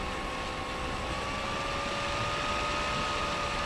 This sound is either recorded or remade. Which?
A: recorded